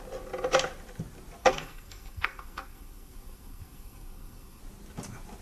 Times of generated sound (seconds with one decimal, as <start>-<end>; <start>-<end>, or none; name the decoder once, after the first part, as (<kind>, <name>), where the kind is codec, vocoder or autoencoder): 1.4-4.6 (codec, SNAC)